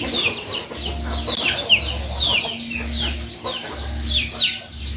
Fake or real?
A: real